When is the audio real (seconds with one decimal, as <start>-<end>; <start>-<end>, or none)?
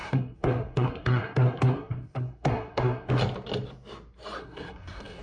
3.1-4.4